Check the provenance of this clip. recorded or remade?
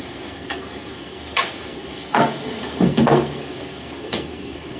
remade